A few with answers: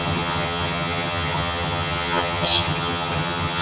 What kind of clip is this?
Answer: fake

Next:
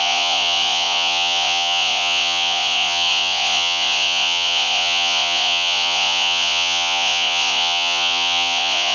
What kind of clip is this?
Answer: fake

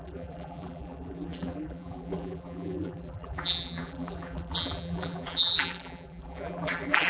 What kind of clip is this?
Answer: fake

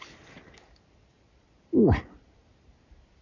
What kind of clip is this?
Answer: real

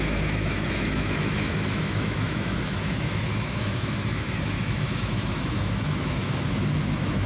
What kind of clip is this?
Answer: fake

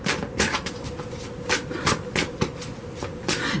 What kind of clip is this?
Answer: real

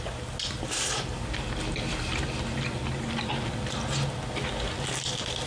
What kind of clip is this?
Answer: real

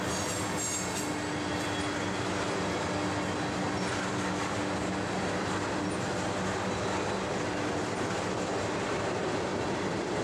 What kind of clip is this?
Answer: real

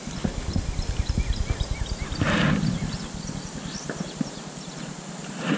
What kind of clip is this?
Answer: real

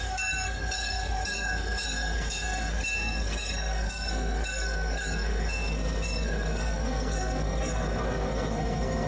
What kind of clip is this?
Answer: fake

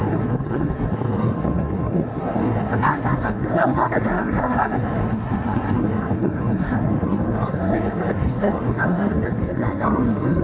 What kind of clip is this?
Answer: fake